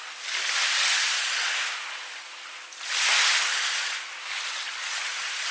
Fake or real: real